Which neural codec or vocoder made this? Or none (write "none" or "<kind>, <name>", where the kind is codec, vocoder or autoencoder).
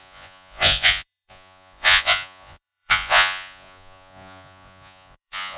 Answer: vocoder, Vocos